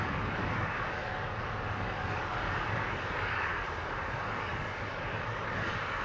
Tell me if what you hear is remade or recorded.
remade